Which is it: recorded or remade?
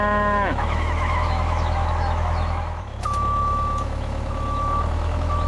remade